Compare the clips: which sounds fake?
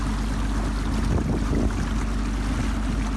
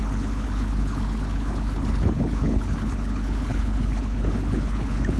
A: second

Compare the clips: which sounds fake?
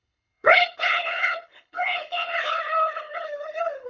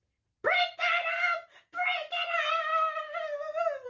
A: first